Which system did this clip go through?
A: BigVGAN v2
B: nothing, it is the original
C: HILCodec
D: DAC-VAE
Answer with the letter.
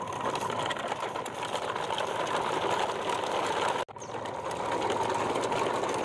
B